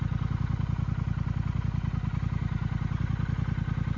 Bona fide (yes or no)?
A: yes